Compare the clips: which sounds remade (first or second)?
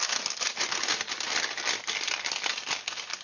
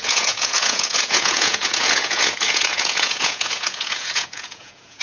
second